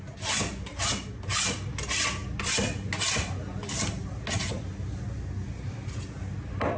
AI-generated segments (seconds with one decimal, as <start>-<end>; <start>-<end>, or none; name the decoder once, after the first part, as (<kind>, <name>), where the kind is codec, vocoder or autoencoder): none